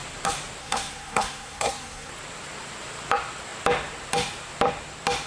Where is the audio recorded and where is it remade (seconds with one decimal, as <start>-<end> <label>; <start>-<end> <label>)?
0.0-0.6 recorded; 0.6-2.1 remade; 2.1-5.3 recorded